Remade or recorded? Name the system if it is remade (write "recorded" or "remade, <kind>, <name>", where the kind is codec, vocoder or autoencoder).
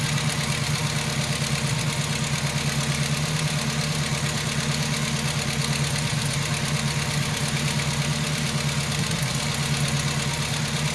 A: recorded